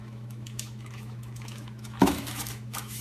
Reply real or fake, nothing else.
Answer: fake